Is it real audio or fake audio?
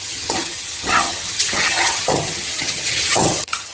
fake